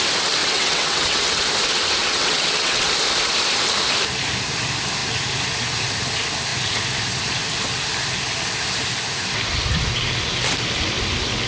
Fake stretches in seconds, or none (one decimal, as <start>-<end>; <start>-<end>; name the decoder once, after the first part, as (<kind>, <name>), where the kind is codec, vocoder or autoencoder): 0.4-1.4 (vocoder, WaveNeXt); 2.0-2.9